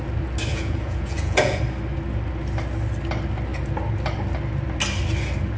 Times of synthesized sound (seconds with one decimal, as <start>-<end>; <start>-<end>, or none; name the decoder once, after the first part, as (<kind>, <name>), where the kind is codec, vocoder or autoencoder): 0.5-1.6 (vocoder, Vocos)